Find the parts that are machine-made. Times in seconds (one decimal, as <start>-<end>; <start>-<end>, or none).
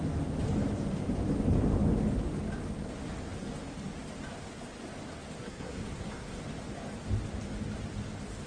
5.4-6.4